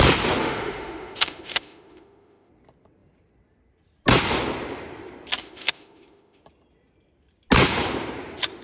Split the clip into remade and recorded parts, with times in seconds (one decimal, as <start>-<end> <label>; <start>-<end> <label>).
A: 0.0-0.4 recorded; 0.4-2.5 remade; 2.5-5.4 recorded; 5.4-6.4 remade; 6.4-8.6 recorded